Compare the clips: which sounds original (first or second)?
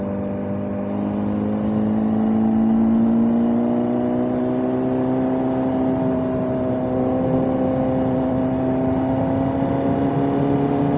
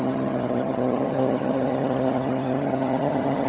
first